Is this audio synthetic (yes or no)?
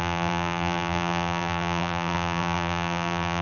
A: yes